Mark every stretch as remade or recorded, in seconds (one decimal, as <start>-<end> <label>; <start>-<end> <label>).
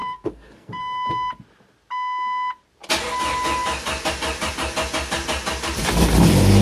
0.0-0.8 remade; 0.8-6.6 recorded